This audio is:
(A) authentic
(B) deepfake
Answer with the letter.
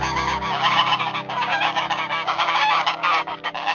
B